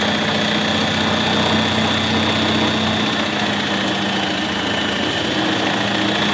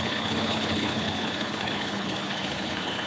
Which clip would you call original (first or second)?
first